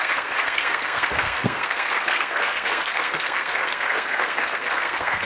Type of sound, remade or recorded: remade